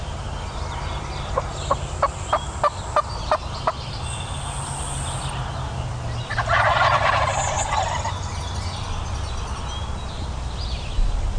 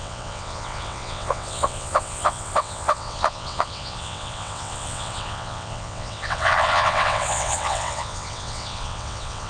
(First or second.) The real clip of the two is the first